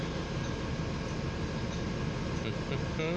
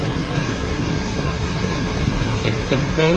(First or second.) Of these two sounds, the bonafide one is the first